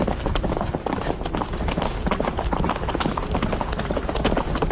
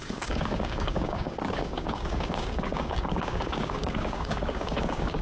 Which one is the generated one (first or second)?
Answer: second